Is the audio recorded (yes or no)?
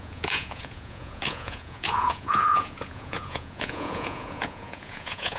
no